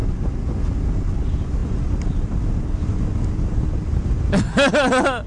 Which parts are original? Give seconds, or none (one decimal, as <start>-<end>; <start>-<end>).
0.0-5.3

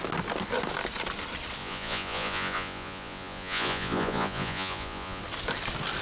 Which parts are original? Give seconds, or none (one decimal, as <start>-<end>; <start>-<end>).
0.0-1.6; 5.2-6.0

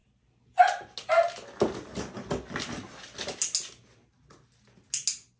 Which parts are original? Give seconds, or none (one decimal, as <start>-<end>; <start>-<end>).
0.0-5.4

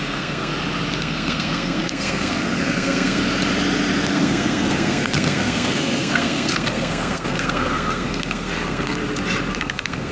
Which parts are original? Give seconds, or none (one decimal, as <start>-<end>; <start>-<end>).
0.5-1.0; 3.2-4.1; 9.0-9.5

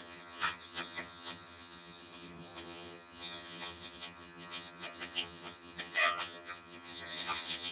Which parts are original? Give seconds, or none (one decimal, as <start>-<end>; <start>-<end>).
none

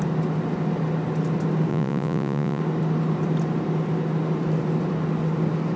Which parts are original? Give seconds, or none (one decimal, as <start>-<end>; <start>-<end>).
0.0-1.7; 2.6-5.8

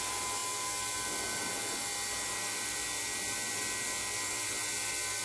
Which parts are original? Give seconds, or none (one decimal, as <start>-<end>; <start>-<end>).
0.0-5.2

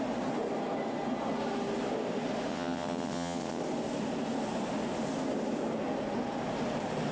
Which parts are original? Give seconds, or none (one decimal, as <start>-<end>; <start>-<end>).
0.0-2.5; 3.6-7.1